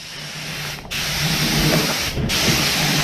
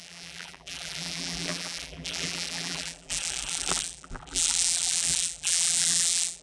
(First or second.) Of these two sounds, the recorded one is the first